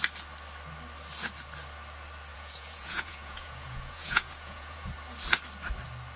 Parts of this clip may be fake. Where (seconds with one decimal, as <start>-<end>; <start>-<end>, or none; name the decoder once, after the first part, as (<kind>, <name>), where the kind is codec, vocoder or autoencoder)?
2.3-4.9 (vocoder, Vocos)